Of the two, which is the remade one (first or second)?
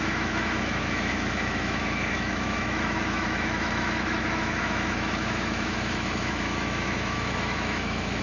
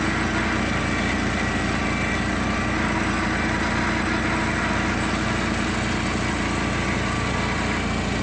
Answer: first